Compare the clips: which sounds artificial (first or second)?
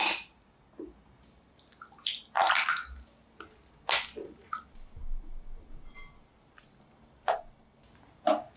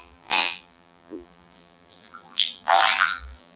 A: second